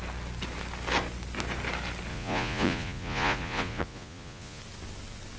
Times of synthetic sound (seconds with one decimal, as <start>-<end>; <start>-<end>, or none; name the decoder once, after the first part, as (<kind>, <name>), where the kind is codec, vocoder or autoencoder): 2.1-4.6 (vocoder, Vocos)